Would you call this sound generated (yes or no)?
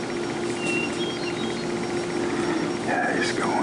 no